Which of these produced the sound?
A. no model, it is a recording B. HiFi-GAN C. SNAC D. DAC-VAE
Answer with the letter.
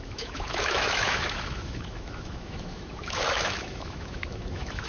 D